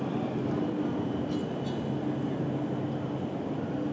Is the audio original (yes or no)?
yes